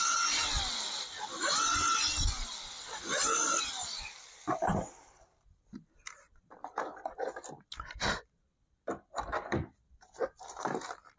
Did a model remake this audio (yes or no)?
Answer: no